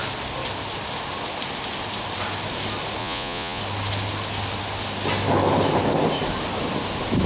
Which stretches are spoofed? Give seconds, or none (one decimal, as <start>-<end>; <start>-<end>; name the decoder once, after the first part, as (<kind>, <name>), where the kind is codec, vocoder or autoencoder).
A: 3.0-3.6 (vocoder, Vocos)